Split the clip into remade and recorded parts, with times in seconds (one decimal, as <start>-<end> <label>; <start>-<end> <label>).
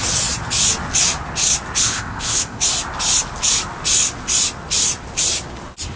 0.0-1.8 recorded; 1.8-2.6 remade; 2.6-6.0 recorded